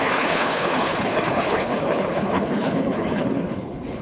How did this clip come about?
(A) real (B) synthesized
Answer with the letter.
B